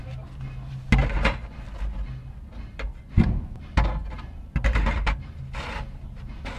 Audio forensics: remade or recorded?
recorded